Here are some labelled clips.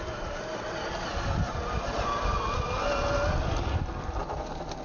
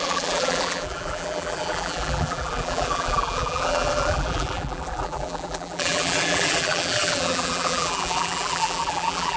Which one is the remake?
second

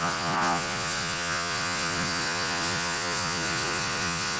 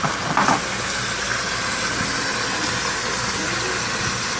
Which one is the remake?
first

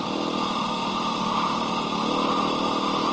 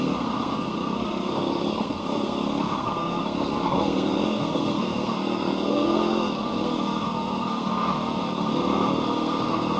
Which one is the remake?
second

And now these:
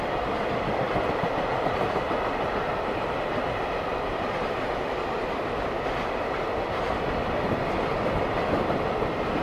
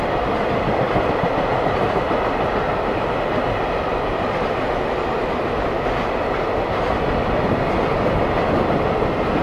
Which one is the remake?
first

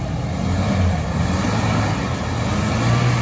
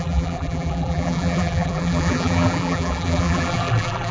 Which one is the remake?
second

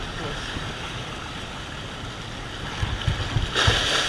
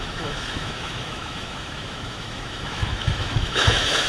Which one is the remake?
second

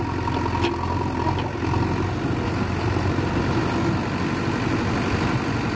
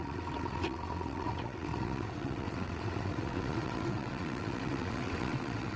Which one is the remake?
second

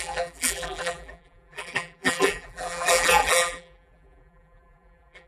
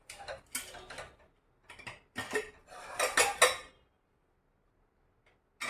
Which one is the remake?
first